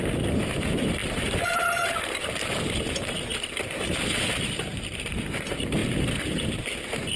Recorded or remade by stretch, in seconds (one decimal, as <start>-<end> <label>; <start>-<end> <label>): 0.0-3.3 remade; 3.3-4.3 recorded; 4.3-7.2 remade